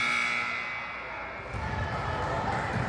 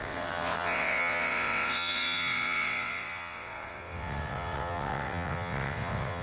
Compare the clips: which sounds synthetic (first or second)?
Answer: second